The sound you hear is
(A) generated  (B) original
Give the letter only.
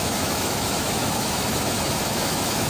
A